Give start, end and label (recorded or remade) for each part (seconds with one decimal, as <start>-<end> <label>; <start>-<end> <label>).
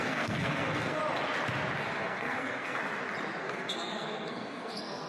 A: 0.0-1.0 remade; 1.0-1.8 recorded; 1.8-2.8 remade; 2.8-3.4 recorded; 3.4-5.1 remade